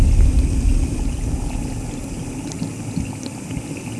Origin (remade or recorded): recorded